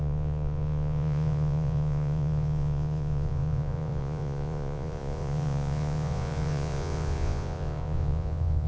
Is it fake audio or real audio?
fake